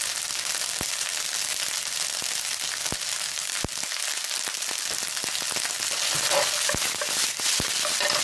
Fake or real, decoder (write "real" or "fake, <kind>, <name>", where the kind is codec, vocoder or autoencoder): real